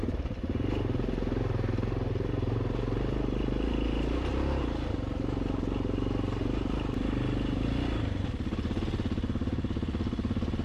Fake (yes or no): no